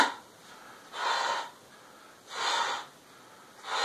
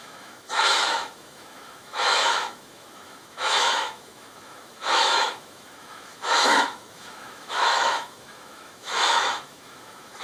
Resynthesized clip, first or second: second